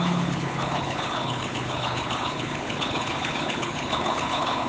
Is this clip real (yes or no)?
no